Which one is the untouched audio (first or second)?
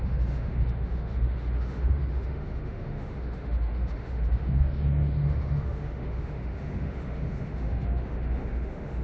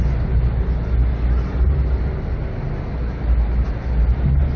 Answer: second